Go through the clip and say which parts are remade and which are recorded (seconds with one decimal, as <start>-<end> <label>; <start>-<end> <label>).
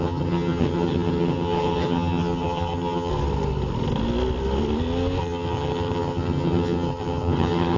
0.0-3.1 remade; 3.1-5.2 recorded; 5.2-7.8 remade